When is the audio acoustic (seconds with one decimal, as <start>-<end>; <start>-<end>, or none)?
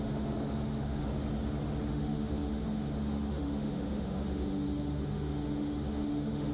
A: 1.0-1.9